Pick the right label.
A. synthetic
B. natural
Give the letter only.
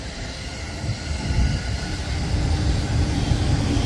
B